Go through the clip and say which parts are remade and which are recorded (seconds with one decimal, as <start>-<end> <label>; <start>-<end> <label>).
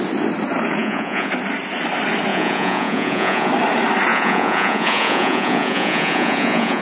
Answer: 0.0-0.8 recorded; 0.8-1.3 remade; 1.3-2.3 recorded; 2.3-3.5 remade; 3.5-4.1 recorded; 4.1-6.8 remade